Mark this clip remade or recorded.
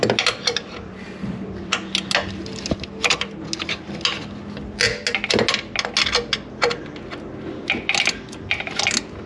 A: recorded